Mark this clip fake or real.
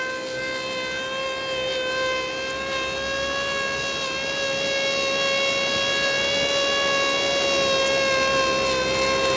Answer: real